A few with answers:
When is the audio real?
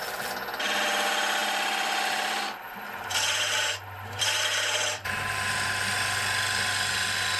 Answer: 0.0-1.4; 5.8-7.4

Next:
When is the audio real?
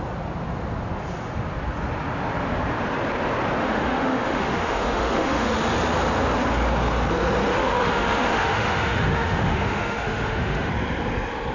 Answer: 0.0-3.6; 5.5-7.5; 10.7-11.5